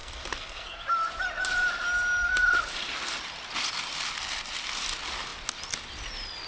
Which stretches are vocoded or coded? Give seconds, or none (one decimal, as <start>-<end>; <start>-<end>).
0.0-0.8